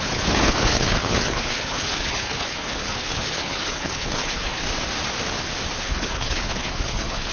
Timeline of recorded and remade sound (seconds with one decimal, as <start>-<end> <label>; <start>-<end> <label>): 0.0-4.6 remade; 4.6-5.8 recorded; 5.8-7.3 remade